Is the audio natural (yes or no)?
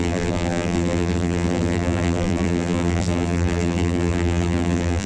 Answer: no